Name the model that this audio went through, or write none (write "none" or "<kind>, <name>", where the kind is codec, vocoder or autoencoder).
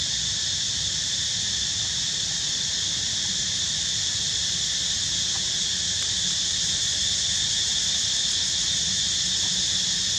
none